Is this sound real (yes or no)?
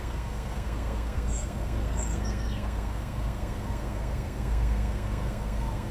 no